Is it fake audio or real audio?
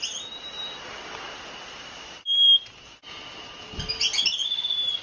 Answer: real